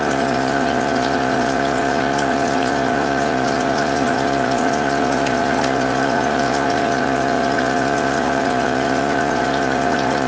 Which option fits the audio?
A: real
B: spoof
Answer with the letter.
B